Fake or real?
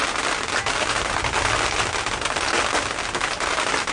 real